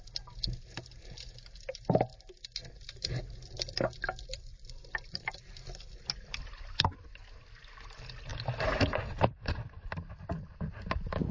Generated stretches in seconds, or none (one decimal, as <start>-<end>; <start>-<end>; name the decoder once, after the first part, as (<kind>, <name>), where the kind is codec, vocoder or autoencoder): none